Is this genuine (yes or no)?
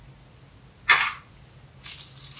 yes